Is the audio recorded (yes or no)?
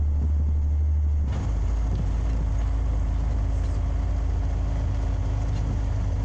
yes